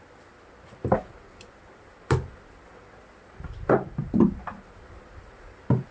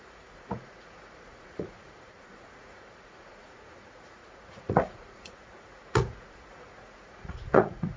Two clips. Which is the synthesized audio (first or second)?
second